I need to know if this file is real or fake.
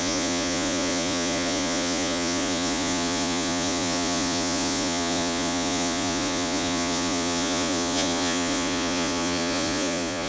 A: fake